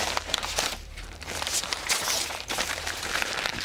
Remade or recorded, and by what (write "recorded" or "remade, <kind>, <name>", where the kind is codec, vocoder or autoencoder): remade, vocoder, BigVGAN v2